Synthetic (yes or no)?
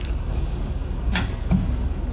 yes